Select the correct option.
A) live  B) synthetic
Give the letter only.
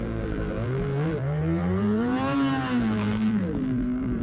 B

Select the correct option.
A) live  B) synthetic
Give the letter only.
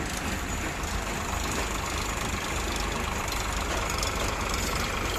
A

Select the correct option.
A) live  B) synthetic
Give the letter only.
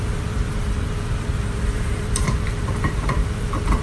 B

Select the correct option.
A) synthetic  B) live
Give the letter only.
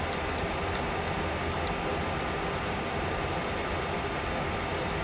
B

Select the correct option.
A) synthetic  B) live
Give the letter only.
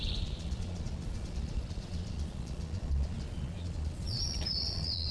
A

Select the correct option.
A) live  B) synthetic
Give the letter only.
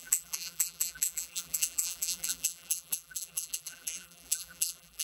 B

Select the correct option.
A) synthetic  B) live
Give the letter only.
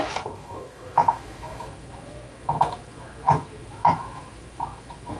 A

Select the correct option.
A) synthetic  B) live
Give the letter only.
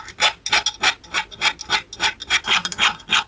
B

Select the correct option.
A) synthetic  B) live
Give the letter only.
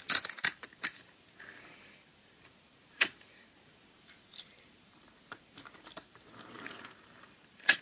A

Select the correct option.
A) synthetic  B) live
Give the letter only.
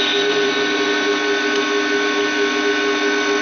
B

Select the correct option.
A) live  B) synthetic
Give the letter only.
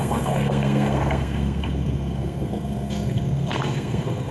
B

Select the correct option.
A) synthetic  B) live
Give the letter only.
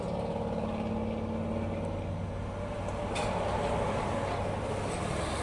B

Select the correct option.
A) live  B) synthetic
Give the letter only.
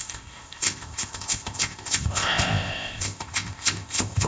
B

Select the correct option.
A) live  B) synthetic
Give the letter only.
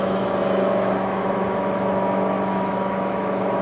B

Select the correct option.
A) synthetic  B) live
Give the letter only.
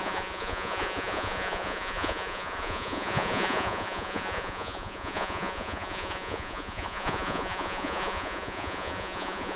A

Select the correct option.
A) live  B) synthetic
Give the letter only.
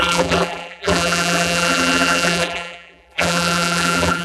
B